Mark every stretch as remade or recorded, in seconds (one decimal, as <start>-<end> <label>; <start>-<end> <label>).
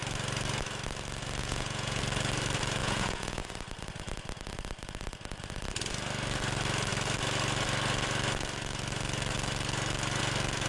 0.0-1.4 recorded; 1.4-2.0 remade; 2.0-2.8 recorded; 2.8-3.4 remade; 3.4-10.7 recorded